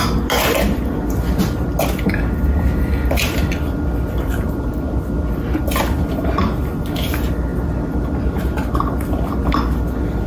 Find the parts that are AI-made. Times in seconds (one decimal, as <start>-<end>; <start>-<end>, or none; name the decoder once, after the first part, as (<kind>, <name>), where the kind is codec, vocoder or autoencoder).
none

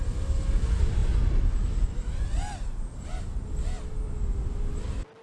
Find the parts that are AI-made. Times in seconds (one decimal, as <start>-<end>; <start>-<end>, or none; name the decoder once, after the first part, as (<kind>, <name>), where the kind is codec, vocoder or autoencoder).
none